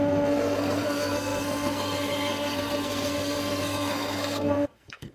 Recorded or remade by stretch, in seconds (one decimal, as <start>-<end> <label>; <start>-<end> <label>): 0.0-5.1 remade